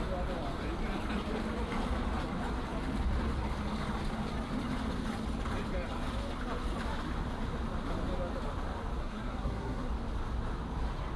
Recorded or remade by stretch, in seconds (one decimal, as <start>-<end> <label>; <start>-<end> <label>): 0.0-9.0 recorded; 9.0-9.9 remade; 9.9-11.2 recorded